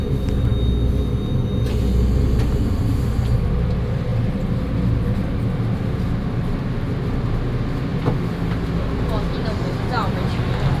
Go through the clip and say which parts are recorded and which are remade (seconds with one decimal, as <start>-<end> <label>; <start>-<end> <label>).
0.0-10.8 recorded